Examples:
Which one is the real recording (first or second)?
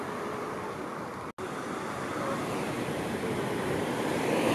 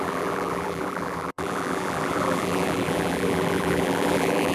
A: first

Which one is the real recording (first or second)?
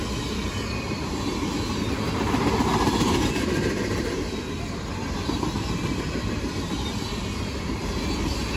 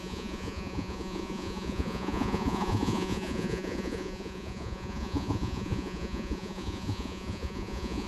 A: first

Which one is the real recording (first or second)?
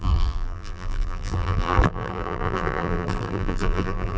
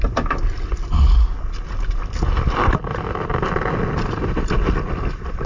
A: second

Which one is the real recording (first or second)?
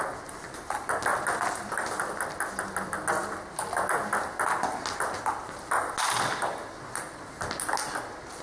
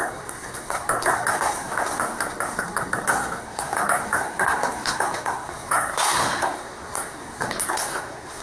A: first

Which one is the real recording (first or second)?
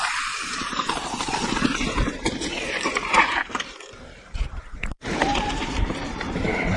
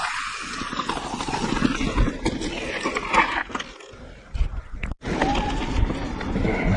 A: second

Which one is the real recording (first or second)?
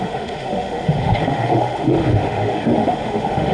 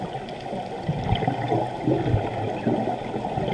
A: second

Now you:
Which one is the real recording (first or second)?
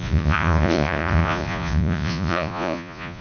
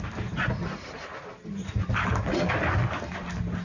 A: second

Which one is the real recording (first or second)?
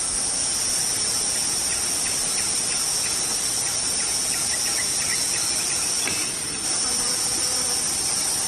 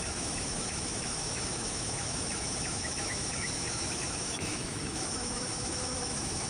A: first